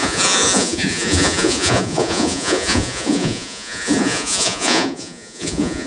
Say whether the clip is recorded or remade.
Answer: remade